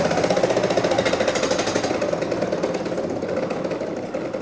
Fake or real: real